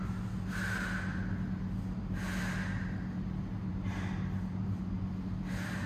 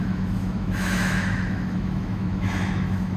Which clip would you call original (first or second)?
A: first